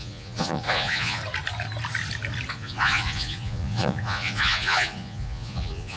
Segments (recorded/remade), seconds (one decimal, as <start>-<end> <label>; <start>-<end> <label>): 0.0-1.2 remade; 1.2-2.5 recorded; 2.5-6.0 remade